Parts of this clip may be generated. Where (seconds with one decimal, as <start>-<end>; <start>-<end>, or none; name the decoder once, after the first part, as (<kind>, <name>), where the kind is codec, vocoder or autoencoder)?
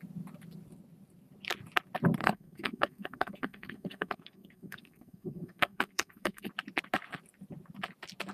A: 2.2-6.5 (codec, SNAC)